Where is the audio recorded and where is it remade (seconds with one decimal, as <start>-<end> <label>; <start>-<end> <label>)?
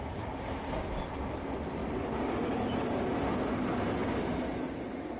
0.0-5.2 recorded